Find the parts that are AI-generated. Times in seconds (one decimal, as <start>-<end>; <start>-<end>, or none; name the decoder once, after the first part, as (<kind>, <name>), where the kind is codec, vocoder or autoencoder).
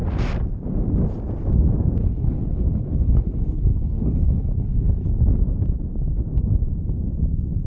2.0-5.1 (codec, HILCodec)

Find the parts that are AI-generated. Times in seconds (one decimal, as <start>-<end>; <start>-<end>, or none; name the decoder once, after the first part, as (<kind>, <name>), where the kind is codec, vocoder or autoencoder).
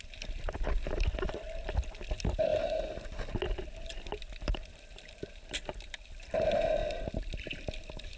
0.0-2.5 (vocoder, BigVGAN v2); 4.2-6.8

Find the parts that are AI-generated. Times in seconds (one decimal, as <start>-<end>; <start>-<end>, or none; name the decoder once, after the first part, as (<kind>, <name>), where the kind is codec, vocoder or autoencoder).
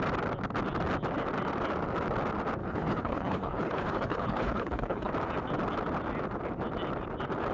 2.6-5.1 (codec, HILCodec)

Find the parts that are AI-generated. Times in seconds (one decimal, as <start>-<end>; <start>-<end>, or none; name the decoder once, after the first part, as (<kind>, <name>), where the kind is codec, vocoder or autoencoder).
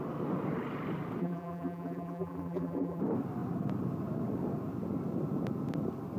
1.2-3.0 (vocoder, BigVGAN v2)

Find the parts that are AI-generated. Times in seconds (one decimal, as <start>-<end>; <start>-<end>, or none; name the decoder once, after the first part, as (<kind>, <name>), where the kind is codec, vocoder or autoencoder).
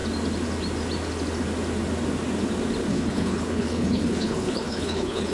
2.9-5.3 (codec, HILCodec)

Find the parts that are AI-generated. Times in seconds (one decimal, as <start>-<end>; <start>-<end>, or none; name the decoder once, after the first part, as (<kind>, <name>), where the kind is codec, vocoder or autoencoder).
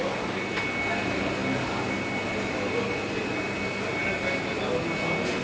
none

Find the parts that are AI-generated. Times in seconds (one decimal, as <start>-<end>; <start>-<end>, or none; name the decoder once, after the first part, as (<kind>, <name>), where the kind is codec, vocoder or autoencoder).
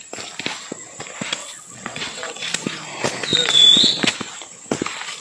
1.4-2.5 (vocoder, WaveNeXt)